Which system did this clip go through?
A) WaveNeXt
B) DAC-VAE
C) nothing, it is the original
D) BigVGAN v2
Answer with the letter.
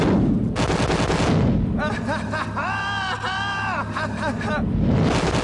C